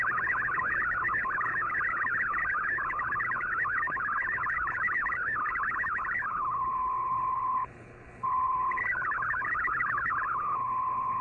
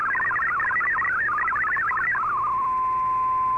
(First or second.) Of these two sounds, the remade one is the first